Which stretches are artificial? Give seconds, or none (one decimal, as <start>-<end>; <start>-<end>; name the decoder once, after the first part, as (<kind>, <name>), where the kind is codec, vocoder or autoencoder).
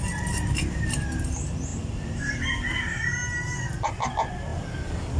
none